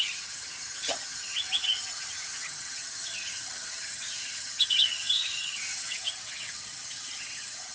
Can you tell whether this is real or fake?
fake